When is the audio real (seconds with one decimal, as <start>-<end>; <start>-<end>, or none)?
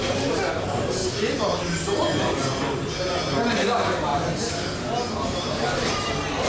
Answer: 1.0-3.5; 4.1-5.4